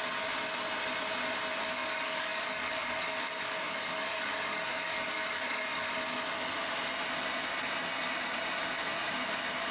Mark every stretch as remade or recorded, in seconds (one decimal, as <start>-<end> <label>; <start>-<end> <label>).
0.0-1.8 recorded; 1.8-5.9 remade; 5.9-9.7 recorded